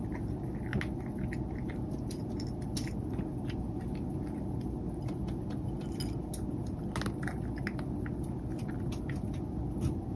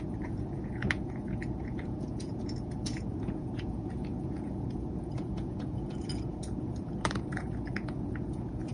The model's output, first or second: second